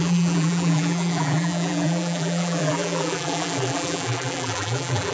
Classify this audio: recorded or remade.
remade